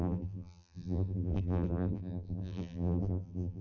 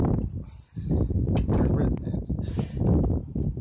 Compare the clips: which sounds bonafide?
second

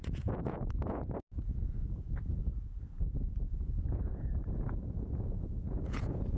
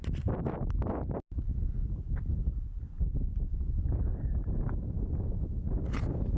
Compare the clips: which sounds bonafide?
second